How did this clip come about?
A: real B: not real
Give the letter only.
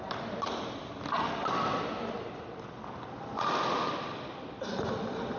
A